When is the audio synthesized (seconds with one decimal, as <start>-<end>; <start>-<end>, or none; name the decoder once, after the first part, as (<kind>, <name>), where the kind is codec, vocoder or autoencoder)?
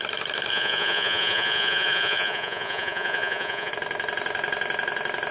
0.5-3.7 (vocoder, Vocos)